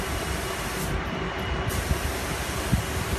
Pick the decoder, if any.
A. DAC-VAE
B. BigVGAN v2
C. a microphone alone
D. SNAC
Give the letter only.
C